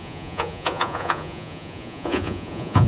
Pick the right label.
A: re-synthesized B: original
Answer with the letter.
A